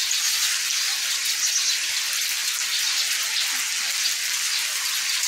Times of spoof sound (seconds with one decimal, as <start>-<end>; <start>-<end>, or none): none